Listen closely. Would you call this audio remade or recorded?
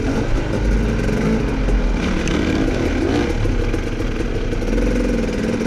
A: recorded